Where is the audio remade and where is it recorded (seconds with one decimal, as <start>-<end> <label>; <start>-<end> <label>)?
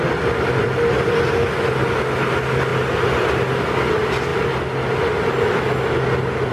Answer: 0.0-6.5 recorded